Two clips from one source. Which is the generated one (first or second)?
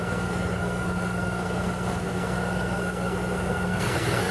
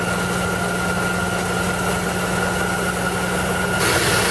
first